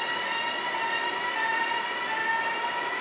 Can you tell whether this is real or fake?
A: real